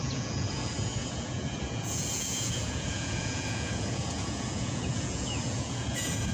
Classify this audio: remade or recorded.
remade